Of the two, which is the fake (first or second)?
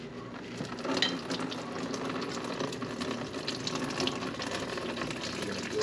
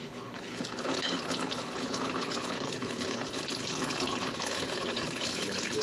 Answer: second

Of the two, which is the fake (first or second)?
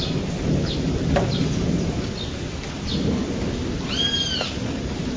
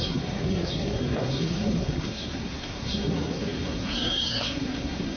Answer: second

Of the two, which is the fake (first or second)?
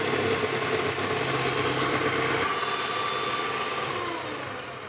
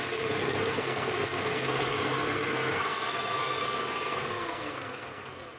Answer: second